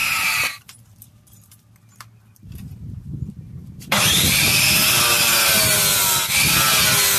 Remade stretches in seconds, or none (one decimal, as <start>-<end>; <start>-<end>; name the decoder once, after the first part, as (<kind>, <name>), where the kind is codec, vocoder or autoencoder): 0.0-4.3 (vocoder, BigVGAN v2)